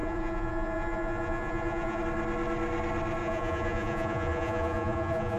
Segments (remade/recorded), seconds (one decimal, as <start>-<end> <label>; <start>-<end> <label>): 0.0-2.0 remade; 2.0-3.2 recorded; 3.2-5.4 remade